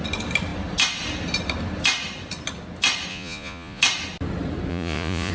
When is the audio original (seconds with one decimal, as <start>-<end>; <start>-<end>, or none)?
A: 0.0-3.1; 3.8-4.7